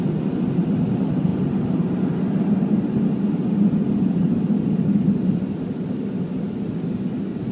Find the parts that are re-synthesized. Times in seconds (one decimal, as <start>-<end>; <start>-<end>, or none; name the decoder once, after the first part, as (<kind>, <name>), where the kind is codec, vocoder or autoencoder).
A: none